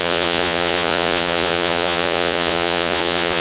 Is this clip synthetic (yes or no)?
yes